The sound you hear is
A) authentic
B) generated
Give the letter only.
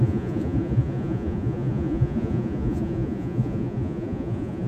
B